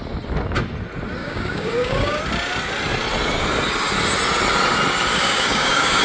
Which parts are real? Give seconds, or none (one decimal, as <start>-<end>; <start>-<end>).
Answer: 0.0-1.2; 2.2-5.1